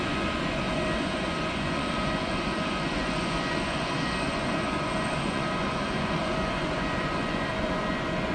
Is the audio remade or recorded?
remade